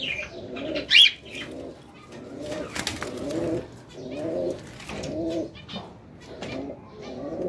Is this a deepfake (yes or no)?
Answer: no